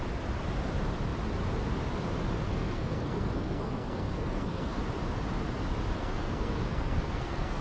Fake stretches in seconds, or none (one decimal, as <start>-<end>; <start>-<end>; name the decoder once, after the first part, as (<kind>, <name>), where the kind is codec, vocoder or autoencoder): 2.5-4.8 (codec, SNAC); 6.0-7.6